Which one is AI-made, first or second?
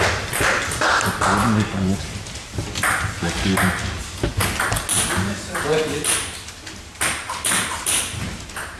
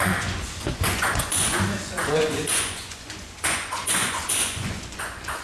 second